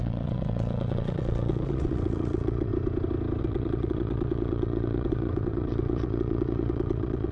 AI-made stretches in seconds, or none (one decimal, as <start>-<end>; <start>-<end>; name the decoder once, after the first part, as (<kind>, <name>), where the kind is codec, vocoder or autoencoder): 0.0-2.7 (vocoder, WaveNeXt); 3.4-7.3